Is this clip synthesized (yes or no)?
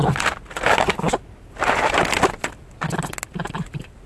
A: no